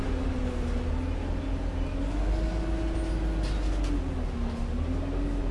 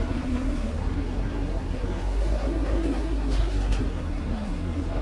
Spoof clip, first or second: second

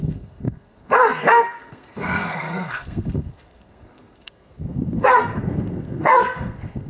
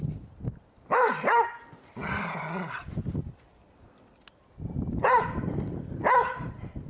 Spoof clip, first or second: first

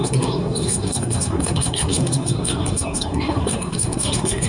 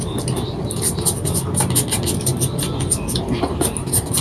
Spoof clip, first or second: first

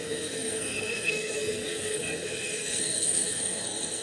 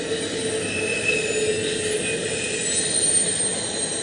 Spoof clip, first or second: first